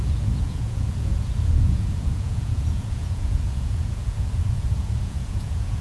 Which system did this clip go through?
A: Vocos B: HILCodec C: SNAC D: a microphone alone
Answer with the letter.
A